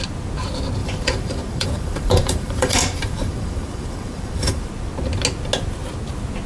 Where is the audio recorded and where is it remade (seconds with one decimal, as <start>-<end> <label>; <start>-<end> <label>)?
0.0-0.8 recorded; 0.8-4.7 remade; 4.7-6.5 recorded